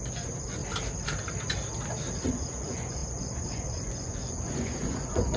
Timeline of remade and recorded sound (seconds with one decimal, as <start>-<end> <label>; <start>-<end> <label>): 0.0-0.6 remade; 0.6-2.3 recorded; 2.3-5.4 remade